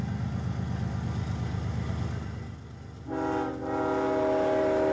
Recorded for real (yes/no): yes